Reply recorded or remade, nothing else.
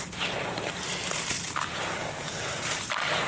recorded